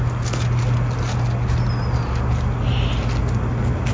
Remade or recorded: recorded